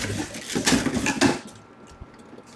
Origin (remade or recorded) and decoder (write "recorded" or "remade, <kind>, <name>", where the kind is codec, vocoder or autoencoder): recorded